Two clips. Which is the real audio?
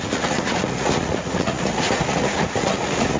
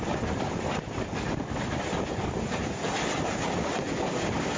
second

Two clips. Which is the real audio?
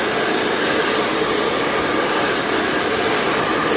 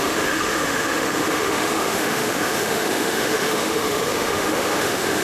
first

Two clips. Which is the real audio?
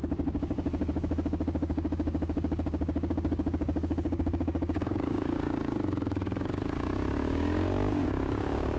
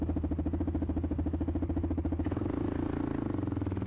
second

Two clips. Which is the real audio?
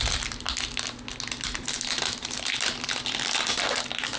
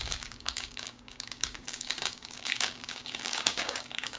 first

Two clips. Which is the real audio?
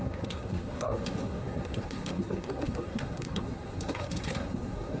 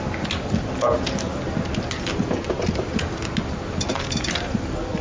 second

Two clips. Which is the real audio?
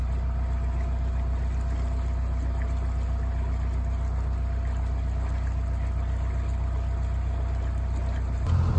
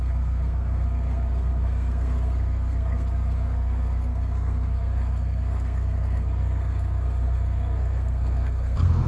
first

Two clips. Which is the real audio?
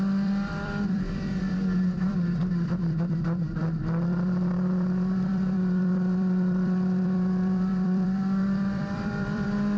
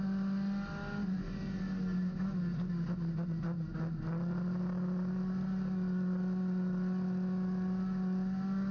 second